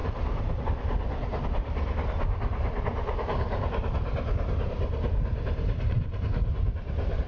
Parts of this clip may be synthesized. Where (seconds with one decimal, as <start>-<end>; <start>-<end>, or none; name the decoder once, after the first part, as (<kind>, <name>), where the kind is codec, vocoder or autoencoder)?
0.0-0.6 (vocoder, BigVGAN v2); 2.5-6.5